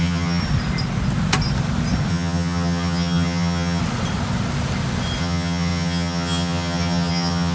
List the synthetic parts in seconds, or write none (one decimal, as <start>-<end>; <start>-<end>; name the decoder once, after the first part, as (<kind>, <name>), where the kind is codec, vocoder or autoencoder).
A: 0.0-0.4 (vocoder, HiFi-GAN); 2.1-3.8; 5.2-7.5